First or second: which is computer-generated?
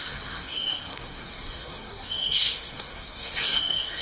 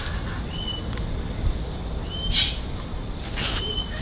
first